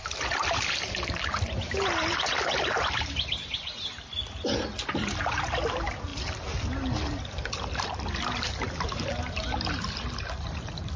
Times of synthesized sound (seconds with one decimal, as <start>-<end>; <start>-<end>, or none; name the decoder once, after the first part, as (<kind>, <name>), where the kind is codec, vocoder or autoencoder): none